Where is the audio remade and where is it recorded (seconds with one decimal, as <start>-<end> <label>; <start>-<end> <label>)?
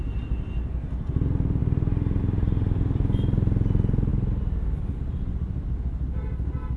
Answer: 0.0-6.8 recorded